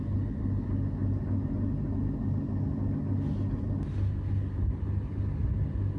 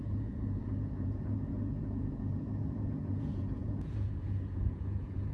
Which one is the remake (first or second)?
second